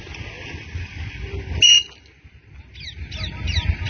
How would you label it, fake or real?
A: real